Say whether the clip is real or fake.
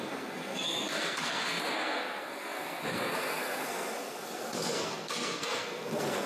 fake